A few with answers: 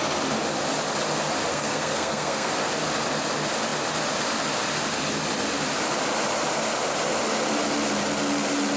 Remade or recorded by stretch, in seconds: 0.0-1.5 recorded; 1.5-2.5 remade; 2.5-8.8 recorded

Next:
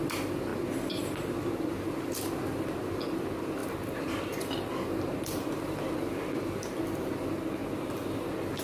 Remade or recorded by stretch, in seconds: 0.0-0.5 remade; 0.5-1.7 recorded; 1.7-3.6 remade; 3.6-5.2 recorded; 5.2-7.6 remade; 7.6-8.6 recorded

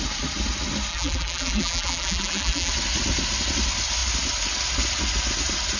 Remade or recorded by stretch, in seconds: 0.0-0.9 recorded; 0.9-2.7 remade; 2.7-5.8 recorded

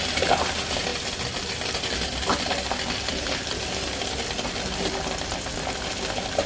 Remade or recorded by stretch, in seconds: 0.0-6.5 recorded

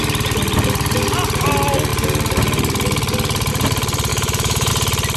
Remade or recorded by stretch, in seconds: 0.0-4.1 recorded; 4.1-4.7 remade; 4.7-5.2 recorded

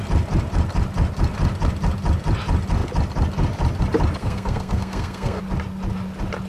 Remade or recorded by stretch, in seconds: 0.0-4.2 recorded; 4.2-5.4 remade; 5.4-6.5 recorded